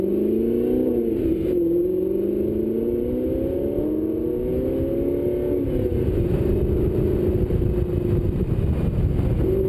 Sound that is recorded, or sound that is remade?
recorded